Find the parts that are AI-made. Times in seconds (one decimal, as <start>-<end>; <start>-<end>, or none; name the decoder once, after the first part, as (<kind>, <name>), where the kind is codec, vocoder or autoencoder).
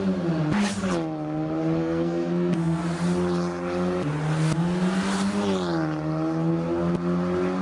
1.8-2.8 (codec, SNAC)